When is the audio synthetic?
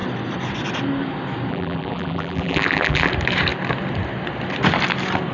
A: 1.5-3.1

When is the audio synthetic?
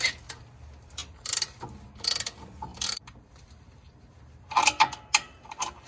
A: 1.0-1.6; 2.7-4.2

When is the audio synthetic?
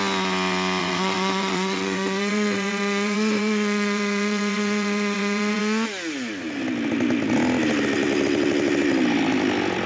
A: 0.8-5.6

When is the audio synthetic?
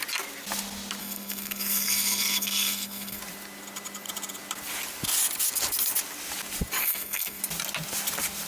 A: 1.0-3.2; 6.8-7.4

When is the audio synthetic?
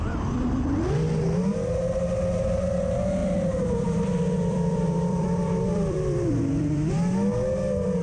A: 3.2-6.9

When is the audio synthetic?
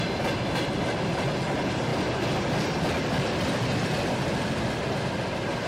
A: none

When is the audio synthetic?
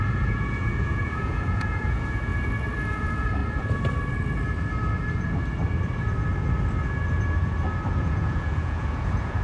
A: 0.0-2.3; 2.9-3.4; 7.9-9.4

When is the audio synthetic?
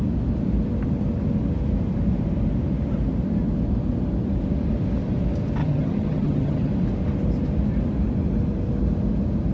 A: 5.6-6.7